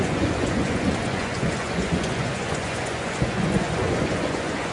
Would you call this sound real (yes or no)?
no